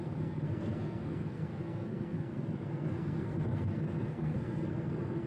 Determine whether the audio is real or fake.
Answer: fake